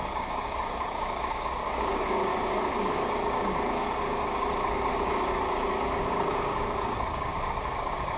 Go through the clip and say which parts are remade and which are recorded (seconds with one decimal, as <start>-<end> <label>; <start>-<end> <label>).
0.0-2.3 remade; 2.3-2.9 recorded; 2.9-8.2 remade